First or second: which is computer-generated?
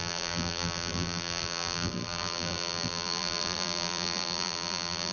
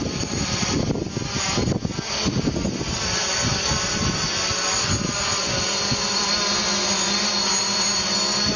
first